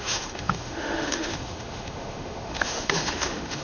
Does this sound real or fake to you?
fake